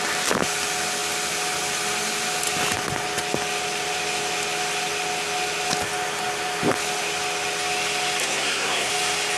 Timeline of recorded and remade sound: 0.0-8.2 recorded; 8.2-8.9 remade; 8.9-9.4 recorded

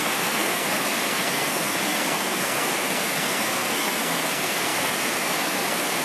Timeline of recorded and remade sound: 0.0-6.0 remade

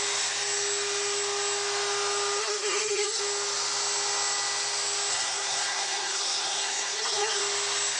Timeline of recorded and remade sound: 0.0-2.4 recorded; 2.4-3.2 remade; 3.2-5.1 recorded; 5.1-7.4 remade; 7.4-8.0 recorded